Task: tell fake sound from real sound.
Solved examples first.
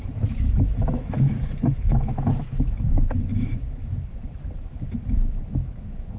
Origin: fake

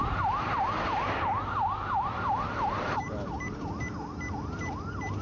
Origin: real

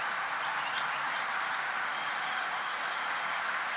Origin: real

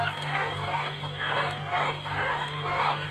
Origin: fake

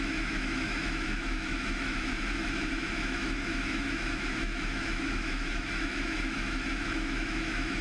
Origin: fake